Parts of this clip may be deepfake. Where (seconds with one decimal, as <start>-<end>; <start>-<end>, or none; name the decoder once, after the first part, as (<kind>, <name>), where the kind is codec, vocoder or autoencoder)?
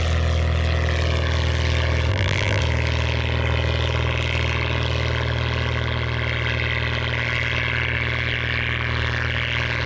2.1-2.6 (vocoder, BigVGAN v2)